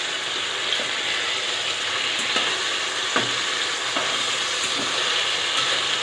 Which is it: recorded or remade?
recorded